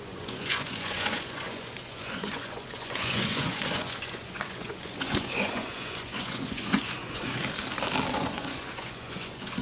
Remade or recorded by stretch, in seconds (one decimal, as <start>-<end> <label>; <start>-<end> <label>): 0.0-7.4 remade; 7.4-8.1 recorded; 8.1-9.6 remade